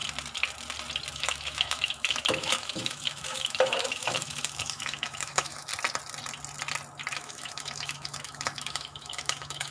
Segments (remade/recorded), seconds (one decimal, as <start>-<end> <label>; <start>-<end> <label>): 0.0-1.1 recorded; 1.1-5.7 remade; 5.7-7.1 recorded; 7.1-9.7 remade